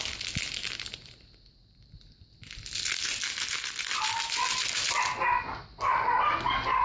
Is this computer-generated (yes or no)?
no